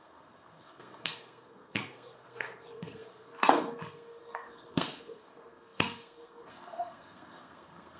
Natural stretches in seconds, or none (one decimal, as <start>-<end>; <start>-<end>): none

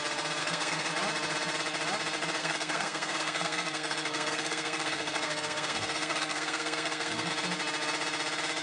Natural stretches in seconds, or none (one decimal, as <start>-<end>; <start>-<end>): 0.0-0.4; 0.9-2.4; 7.3-8.6

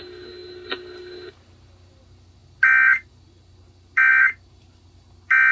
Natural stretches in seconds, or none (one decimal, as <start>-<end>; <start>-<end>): 0.0-5.5

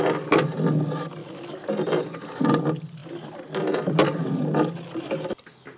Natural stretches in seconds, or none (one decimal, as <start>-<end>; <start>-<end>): 0.0-5.8

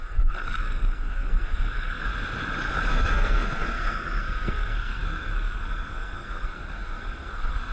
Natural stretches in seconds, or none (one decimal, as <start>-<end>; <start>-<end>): 2.1-2.9

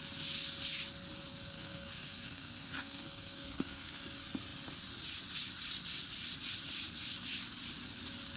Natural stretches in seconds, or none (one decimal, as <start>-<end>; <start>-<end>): 0.0-1.3; 4.0-8.4

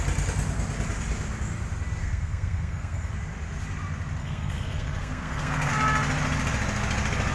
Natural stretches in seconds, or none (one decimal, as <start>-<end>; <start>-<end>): 0.0-2.0; 3.1-4.2; 5.7-7.3